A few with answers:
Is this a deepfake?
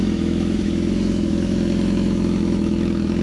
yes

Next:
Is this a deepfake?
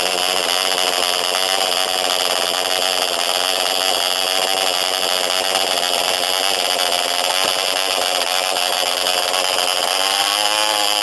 yes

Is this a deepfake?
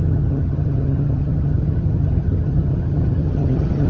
yes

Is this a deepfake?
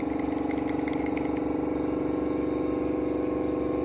no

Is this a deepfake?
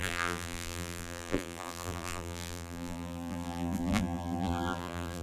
yes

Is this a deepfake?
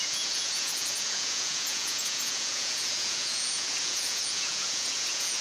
yes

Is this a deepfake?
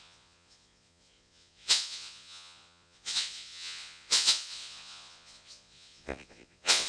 yes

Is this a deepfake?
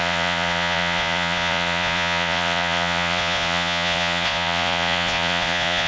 yes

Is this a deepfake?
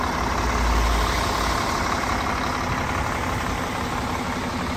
no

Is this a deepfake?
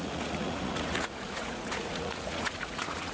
yes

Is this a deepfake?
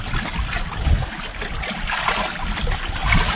no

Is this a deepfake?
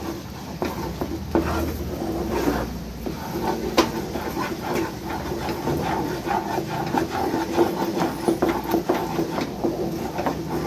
no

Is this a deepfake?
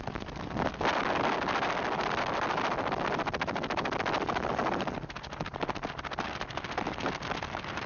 no